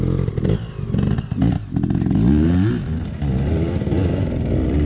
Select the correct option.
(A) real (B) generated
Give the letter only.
A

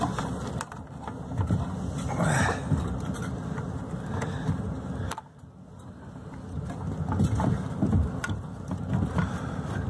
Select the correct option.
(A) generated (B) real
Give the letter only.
B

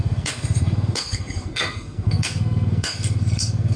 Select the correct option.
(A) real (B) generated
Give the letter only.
B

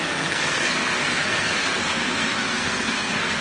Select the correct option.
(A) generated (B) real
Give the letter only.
A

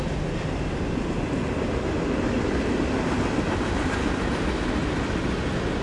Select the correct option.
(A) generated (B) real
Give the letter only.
B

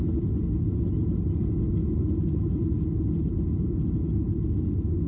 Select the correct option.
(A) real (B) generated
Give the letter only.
A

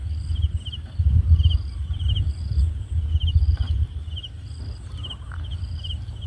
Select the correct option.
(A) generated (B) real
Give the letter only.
B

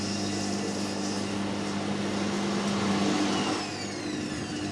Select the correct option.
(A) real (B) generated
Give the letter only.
A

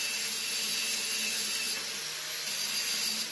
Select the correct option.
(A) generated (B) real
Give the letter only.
B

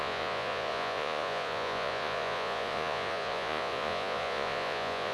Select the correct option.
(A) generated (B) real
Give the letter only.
A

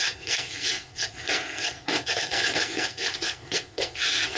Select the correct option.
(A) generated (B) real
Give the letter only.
A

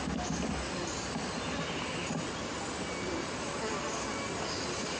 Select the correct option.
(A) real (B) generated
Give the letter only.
A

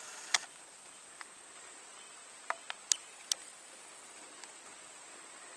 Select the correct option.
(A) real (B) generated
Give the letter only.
A